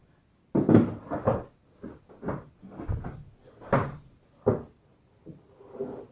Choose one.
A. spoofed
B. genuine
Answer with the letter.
B